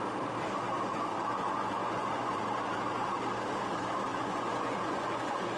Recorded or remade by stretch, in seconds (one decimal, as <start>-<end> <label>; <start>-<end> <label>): 0.0-0.9 recorded; 0.9-2.8 remade; 2.8-4.1 recorded; 4.1-5.6 remade